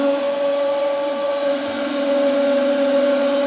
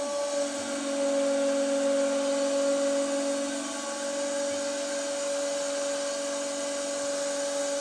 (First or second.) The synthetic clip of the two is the first